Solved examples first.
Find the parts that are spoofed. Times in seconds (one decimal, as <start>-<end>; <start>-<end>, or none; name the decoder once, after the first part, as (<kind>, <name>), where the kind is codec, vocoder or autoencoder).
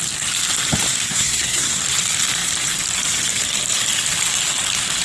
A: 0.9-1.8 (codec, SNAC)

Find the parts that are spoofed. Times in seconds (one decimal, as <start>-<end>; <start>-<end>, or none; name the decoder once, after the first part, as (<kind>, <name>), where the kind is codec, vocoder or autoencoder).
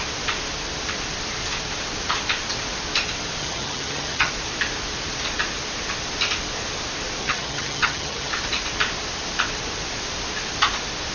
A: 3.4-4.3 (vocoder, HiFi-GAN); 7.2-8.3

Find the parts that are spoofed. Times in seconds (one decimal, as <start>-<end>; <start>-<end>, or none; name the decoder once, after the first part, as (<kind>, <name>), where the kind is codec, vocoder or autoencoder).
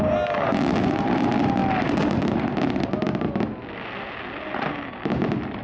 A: none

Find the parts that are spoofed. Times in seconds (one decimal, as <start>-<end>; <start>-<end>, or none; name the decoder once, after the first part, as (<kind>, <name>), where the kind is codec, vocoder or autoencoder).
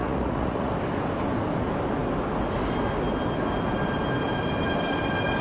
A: 0.0-0.7 (vocoder, Vocos)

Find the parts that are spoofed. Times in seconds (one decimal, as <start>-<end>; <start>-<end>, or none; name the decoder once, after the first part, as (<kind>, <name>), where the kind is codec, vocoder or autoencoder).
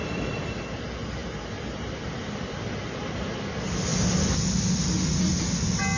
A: none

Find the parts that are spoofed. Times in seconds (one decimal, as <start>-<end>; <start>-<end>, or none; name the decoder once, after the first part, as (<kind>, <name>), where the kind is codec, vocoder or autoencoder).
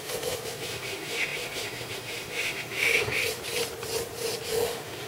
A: 0.0-3.2 (autoencoder, DAC-VAE); 4.5-5.1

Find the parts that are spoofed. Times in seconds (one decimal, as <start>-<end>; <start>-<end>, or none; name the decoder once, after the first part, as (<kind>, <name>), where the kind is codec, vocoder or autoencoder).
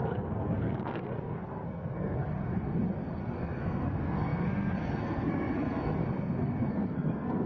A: 0.0-2.3 (codec, SNAC); 3.2-6.0; 6.7-7.5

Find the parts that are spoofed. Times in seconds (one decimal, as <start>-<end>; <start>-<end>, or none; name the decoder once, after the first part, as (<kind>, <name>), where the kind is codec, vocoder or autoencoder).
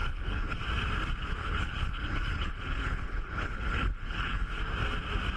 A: 0.0-0.6 (codec, HILCodec); 1.4-4.6